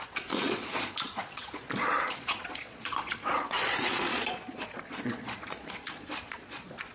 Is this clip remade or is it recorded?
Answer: remade